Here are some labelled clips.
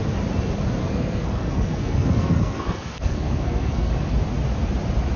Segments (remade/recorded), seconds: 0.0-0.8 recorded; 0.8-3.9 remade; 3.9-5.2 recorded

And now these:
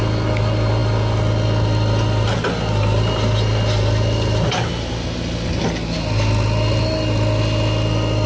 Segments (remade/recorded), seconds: 0.0-8.3 recorded

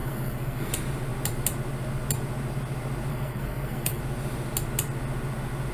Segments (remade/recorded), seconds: 0.0-0.7 remade; 0.7-3.1 recorded; 3.1-4.0 remade; 4.0-5.7 recorded

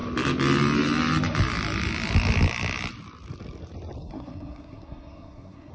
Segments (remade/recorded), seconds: 0.0-4.0 recorded; 4.0-5.7 remade

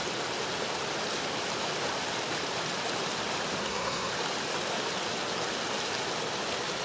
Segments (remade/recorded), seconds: 0.0-3.6 recorded; 3.6-4.1 remade; 4.1-6.8 recorded

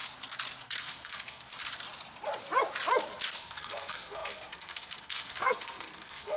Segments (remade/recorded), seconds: 0.0-0.6 recorded; 0.6-1.5 remade; 1.5-3.4 recorded; 3.4-6.4 remade